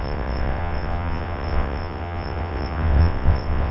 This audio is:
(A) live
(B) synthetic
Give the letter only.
B